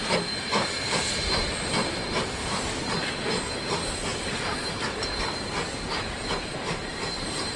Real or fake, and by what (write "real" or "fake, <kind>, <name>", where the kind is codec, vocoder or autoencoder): fake, vocoder, BigVGAN v2